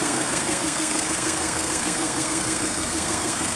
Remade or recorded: remade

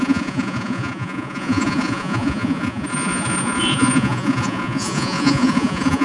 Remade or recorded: remade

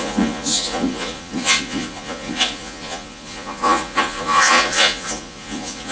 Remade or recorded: remade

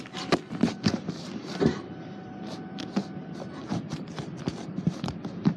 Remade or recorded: remade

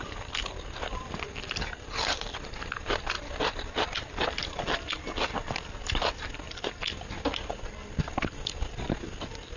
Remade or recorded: recorded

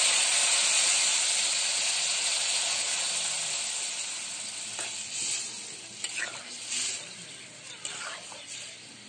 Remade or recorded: recorded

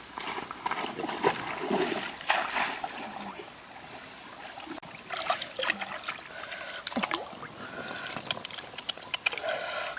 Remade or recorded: recorded